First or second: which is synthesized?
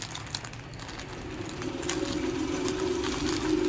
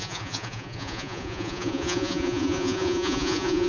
second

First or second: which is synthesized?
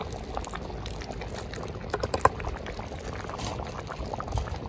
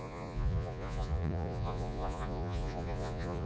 second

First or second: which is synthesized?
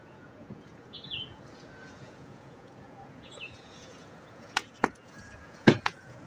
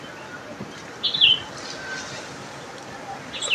first